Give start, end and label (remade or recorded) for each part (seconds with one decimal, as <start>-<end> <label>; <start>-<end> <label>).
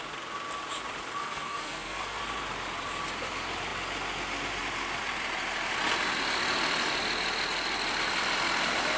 0.0-1.2 recorded; 1.2-2.2 remade; 2.2-9.0 recorded